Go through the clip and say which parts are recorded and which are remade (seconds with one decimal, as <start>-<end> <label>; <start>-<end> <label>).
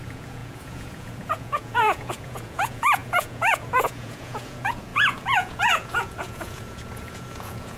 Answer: 0.0-7.8 remade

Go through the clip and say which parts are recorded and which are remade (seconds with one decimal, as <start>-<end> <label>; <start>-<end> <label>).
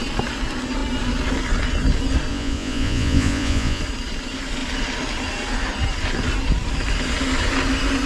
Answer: 0.0-2.3 recorded; 2.3-3.8 remade; 3.8-8.1 recorded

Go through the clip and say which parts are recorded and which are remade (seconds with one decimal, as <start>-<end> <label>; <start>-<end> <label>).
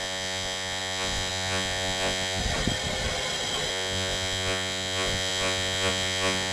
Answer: 0.0-2.4 remade; 2.4-3.7 recorded; 3.7-6.5 remade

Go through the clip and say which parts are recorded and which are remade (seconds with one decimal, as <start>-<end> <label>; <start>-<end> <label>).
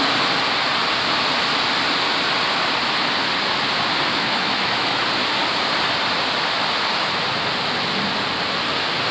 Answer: 0.0-4.1 recorded; 4.1-5.0 remade; 5.0-9.1 recorded